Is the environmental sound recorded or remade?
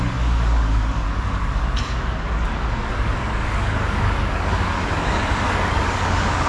remade